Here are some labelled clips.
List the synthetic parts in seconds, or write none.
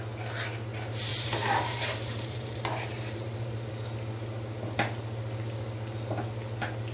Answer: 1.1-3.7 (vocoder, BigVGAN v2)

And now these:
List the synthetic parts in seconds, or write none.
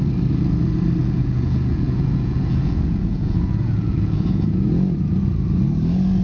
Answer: 1.0-4.7 (vocoder, Vocos)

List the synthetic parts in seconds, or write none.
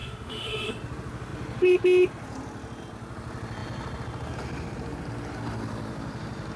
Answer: 0.0-0.7 (autoencoder, DAC-VAE)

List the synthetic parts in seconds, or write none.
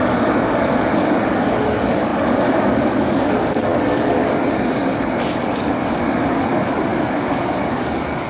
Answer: 0.0-8.3 (codec, DAC)